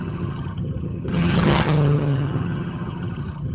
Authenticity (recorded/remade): remade